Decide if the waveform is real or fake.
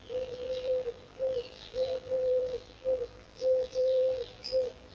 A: fake